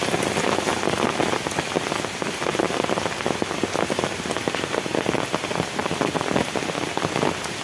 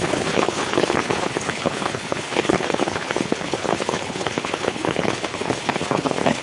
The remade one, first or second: second